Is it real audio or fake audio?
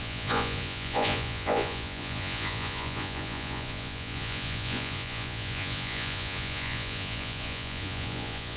fake